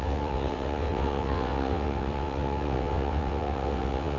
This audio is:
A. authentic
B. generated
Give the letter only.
B